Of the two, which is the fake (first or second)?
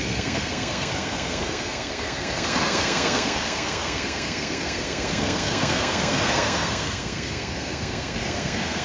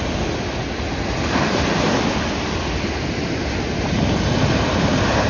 first